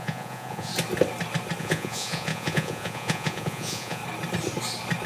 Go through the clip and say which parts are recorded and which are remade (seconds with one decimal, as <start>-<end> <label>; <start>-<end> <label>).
0.0-0.7 remade; 0.7-1.6 recorded; 1.6-4.0 remade; 4.0-5.1 recorded